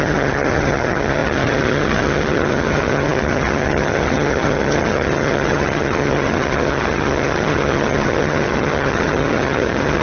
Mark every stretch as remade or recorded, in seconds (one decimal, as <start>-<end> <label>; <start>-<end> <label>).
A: 0.0-10.0 remade